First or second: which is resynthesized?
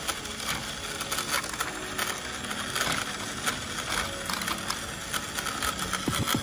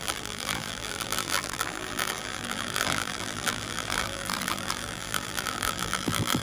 second